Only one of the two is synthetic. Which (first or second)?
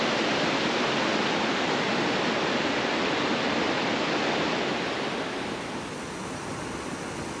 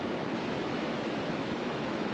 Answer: second